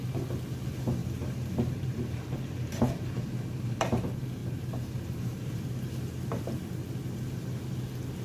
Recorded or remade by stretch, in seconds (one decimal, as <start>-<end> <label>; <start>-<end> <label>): 0.0-1.0 recorded; 1.0-4.0 remade; 4.0-4.4 recorded; 4.4-5.6 remade; 5.6-8.2 recorded